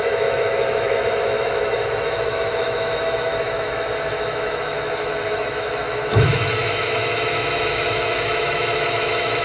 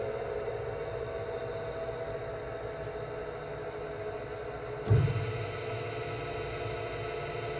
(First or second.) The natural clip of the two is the second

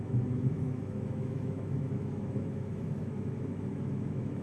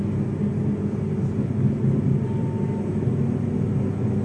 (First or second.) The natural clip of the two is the second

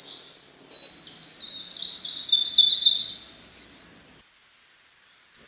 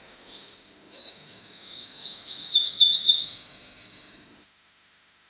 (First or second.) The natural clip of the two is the first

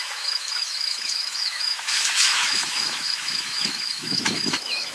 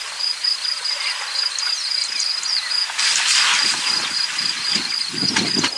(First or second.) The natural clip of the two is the second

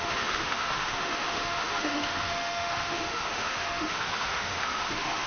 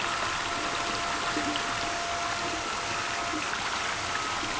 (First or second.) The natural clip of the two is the second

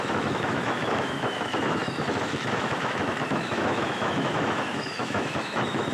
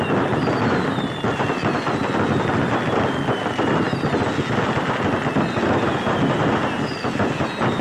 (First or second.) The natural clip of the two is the second